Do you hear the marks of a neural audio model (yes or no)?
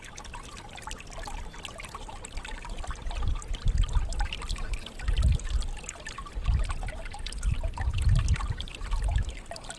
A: no